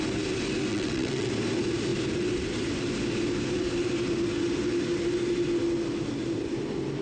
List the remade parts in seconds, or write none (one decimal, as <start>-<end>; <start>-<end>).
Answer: 0.7-1.3